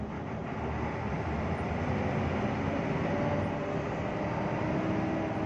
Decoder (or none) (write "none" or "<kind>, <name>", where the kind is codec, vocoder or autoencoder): none